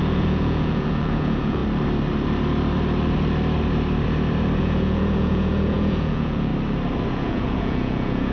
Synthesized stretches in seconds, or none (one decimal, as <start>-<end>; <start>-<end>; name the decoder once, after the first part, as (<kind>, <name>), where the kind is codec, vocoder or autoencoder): 0.0-1.6 (vocoder, Vocos); 4.6-6.5; 7.1-8.3